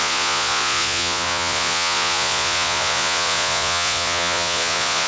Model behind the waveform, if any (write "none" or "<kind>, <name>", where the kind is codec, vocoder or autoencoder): vocoder, Vocos